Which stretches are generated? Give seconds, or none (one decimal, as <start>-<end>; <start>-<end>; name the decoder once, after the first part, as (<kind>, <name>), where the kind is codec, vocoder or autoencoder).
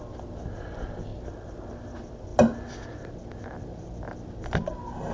none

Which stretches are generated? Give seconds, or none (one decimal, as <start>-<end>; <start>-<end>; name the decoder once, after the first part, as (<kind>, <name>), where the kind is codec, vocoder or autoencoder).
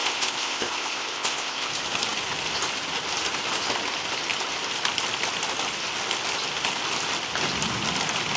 0.0-1.7 (codec, ZipCodec)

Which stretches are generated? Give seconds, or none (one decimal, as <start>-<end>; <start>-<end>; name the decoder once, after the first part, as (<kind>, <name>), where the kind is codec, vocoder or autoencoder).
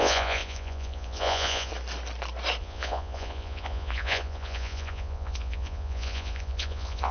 0.0-1.7 (vocoder, Vocos); 2.6-7.1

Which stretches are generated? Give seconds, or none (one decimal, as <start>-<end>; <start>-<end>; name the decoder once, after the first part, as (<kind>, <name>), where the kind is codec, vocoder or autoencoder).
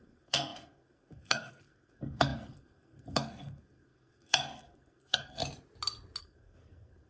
0.0-5.4 (codec, SNAC); 6.2-7.1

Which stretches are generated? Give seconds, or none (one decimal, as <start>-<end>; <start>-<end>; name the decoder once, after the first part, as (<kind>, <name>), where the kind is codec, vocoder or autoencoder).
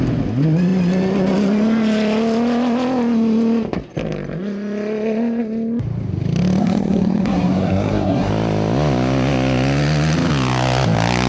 6.6-8.3 (codec, SNAC)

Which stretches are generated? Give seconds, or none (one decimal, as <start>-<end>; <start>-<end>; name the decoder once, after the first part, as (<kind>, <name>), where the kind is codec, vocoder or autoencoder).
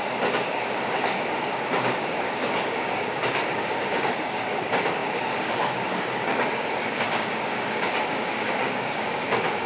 0.0-9.7 (codec, DAC)